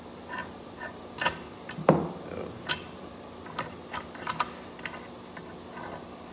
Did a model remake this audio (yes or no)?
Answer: no